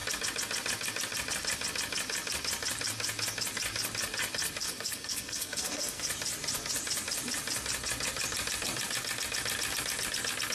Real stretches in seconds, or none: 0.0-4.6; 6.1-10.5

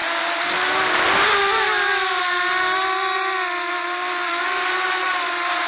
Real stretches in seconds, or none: 0.0-1.4

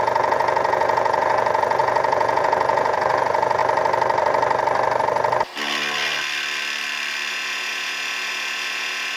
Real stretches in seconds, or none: 3.6-7.3

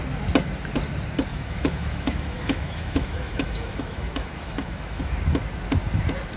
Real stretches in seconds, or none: 0.0-1.3; 5.1-6.4

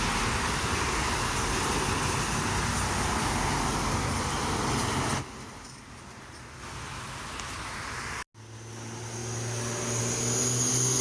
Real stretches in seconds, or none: 0.0-11.0

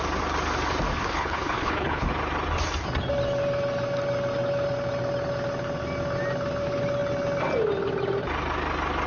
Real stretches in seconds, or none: 0.0-0.9; 2.1-9.1